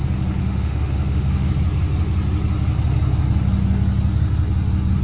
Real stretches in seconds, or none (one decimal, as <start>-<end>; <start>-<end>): 0.0-0.4; 1.5-5.0